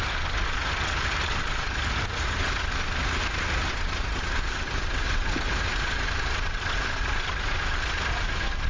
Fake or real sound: real